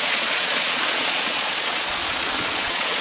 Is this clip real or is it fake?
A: fake